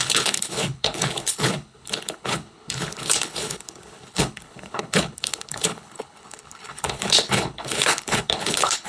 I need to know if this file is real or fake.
fake